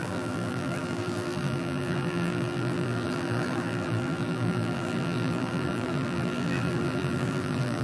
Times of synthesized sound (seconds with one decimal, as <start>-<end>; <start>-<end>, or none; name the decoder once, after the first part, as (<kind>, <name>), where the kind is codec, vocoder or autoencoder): 0.0-7.8 (vocoder, BigVGAN v2)